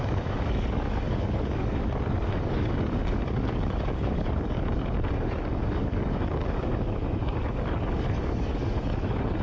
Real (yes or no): no